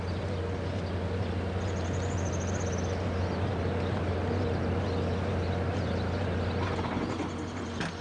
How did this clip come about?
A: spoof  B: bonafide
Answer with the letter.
B